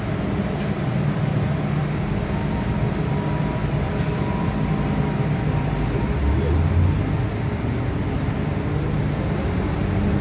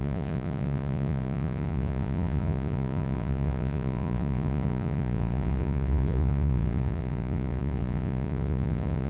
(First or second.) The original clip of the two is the first